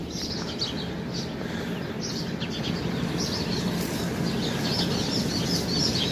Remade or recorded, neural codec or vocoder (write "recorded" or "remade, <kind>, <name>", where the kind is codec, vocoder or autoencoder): recorded